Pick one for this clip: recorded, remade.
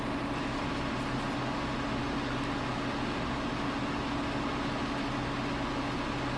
recorded